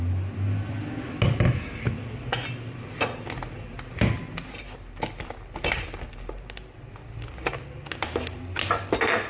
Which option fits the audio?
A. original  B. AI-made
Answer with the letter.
A